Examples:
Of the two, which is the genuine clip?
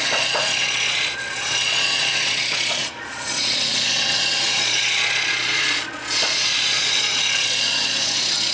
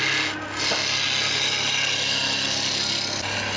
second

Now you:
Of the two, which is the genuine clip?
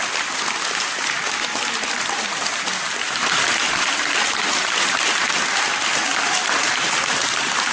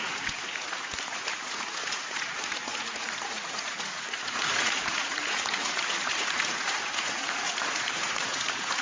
first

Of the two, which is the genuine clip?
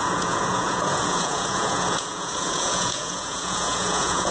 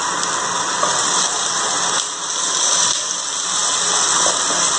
second